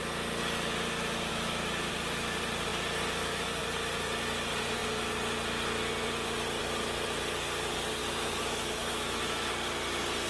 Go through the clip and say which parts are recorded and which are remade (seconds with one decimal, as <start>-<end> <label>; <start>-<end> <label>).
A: 0.0-1.3 recorded; 1.3-1.9 remade; 1.9-8.0 recorded; 8.0-9.5 remade; 9.5-10.3 recorded